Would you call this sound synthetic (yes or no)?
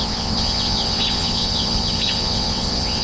yes